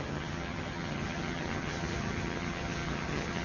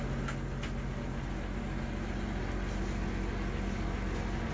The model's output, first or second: first